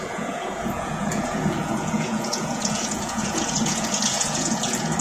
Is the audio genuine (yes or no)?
no